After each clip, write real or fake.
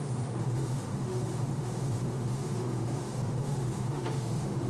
fake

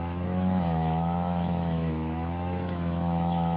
fake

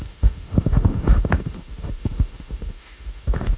fake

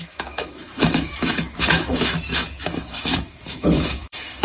fake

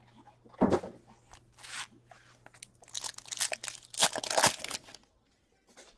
real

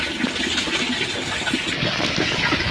real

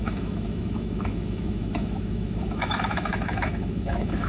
fake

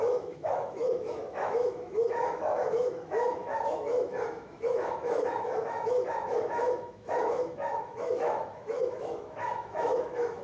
fake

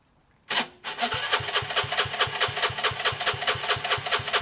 real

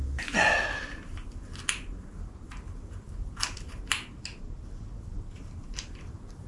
real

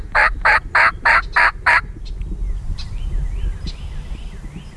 real